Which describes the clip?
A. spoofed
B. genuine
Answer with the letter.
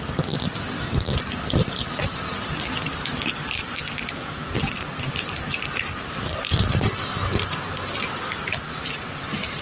B